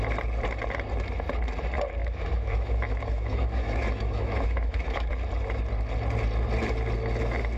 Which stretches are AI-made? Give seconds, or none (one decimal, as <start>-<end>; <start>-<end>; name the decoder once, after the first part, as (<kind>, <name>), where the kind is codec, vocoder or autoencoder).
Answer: 2.0-5.1 (autoencoder, DAC-VAE)